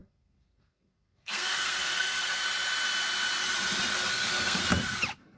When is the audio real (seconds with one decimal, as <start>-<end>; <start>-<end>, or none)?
2.4-4.1; 4.6-5.4